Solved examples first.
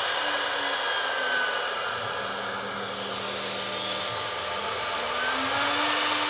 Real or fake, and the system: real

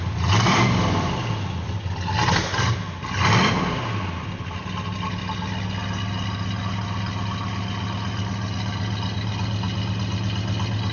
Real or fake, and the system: real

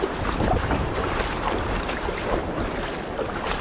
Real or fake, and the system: real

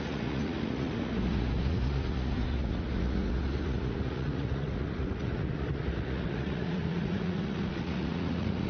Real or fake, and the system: fake, vocoder, Vocos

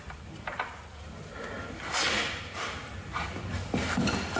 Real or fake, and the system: real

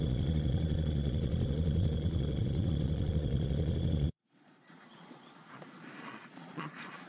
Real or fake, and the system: fake, vocoder, Vocos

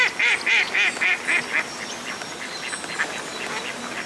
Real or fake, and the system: real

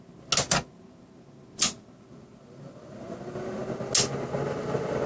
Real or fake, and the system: real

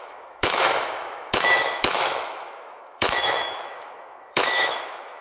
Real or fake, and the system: fake, autoencoder, DAC-VAE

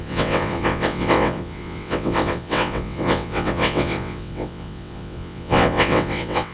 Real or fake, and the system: fake, vocoder, WaveNeXt